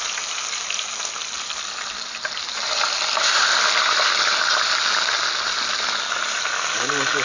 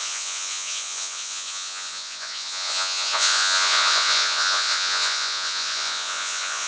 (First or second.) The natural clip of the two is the first